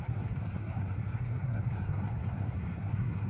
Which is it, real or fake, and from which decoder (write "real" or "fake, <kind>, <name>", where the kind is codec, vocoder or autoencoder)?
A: fake, codec, SNAC